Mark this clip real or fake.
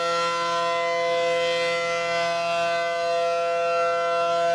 real